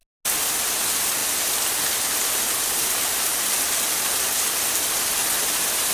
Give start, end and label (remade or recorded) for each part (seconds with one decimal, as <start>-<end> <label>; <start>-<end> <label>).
0.0-5.9 recorded